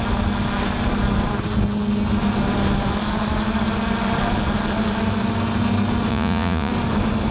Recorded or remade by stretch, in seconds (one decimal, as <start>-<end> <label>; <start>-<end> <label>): 0.0-6.1 recorded; 6.1-6.7 remade; 6.7-7.3 recorded